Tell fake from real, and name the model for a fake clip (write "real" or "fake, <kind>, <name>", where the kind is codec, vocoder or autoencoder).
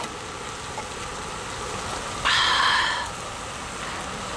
real